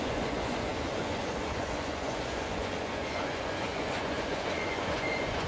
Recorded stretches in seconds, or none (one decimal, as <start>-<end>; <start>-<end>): none